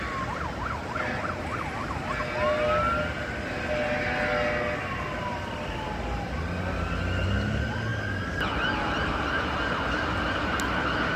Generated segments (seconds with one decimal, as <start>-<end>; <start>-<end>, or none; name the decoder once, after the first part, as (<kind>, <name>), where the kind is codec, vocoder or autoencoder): none